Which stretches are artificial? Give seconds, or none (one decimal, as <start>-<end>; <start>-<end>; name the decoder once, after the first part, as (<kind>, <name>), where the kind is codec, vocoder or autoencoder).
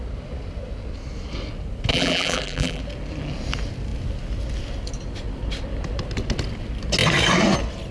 1.9-2.8 (vocoder, BigVGAN v2)